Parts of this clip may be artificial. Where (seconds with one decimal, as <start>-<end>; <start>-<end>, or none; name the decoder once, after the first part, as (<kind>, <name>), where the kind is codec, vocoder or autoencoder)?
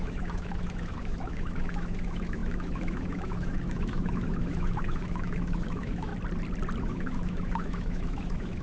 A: 0.0-6.1 (autoencoder, DAC-VAE); 6.8-8.6